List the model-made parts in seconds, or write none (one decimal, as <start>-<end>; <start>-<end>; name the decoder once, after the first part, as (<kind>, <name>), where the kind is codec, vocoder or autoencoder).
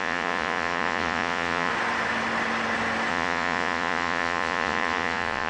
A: 0.0-1.7 (vocoder, Vocos); 3.1-5.5